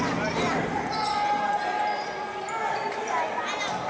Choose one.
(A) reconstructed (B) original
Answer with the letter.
B